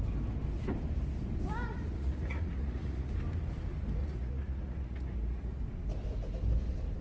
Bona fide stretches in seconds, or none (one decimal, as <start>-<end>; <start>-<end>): 0.0-1.9; 3.1-4.0; 5.6-7.0